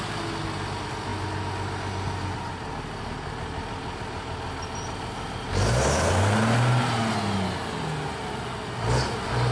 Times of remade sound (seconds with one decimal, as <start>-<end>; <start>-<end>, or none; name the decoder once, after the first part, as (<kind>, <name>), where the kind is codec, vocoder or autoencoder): none